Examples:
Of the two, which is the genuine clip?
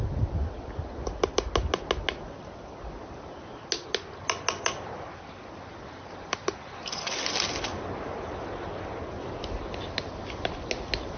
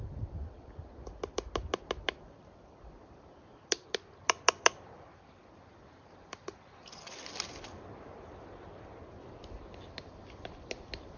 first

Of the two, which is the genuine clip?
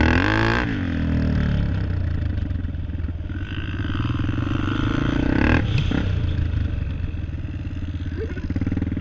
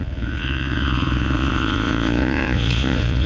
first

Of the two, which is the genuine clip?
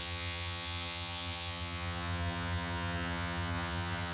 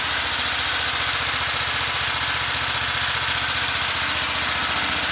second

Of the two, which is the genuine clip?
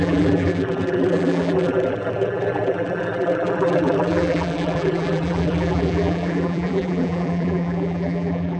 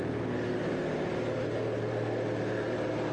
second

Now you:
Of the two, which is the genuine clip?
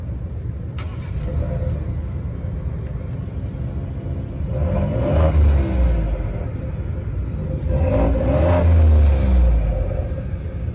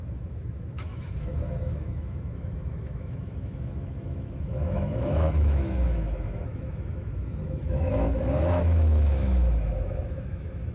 first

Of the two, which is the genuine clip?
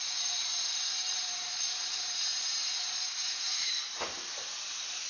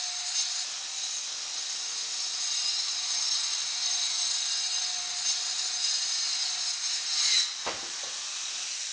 second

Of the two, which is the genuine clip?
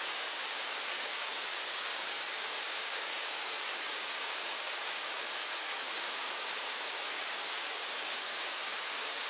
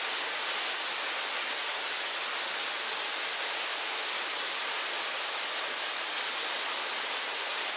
second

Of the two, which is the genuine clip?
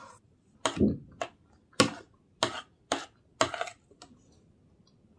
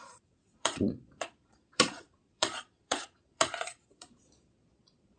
first